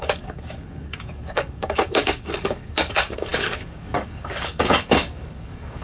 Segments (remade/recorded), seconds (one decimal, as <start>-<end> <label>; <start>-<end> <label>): 0.0-5.8 remade